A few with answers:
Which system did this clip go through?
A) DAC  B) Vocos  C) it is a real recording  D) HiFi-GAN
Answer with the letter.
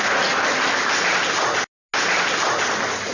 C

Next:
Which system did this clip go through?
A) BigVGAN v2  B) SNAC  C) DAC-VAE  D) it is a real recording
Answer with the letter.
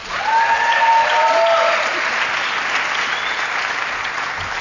D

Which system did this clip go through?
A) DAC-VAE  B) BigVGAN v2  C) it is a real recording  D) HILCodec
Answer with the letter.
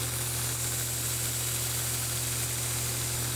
C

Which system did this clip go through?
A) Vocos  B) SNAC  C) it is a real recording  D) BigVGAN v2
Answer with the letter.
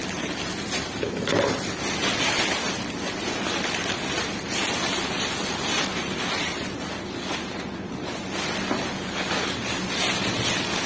C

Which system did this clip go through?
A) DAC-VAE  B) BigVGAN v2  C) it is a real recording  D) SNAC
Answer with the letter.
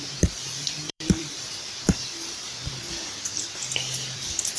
B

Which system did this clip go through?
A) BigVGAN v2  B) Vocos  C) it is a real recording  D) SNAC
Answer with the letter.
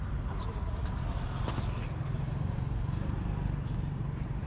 C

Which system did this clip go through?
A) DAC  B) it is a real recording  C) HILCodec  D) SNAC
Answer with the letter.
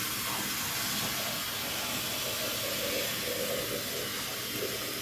B